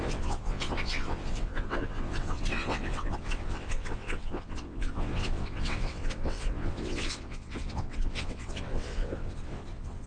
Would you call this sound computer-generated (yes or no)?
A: yes